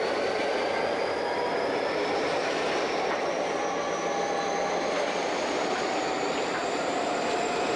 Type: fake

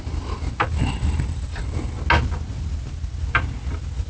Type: real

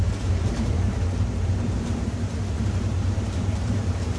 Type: fake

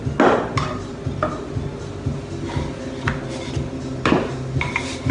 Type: real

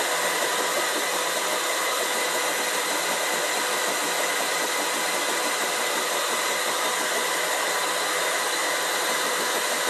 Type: real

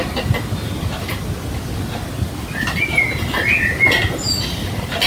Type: real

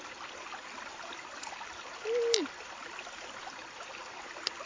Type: real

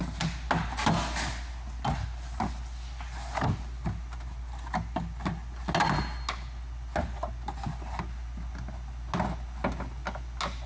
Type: real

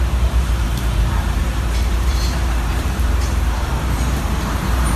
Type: fake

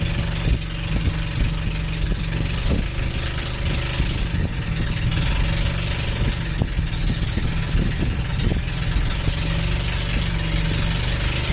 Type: real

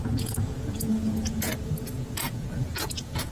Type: fake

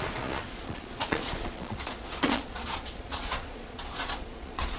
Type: fake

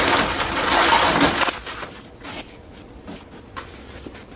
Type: real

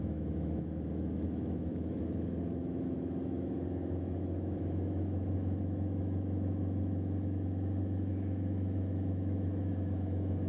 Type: fake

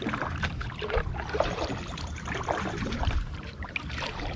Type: fake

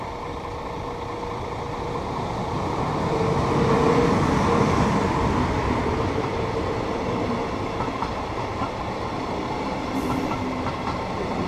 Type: real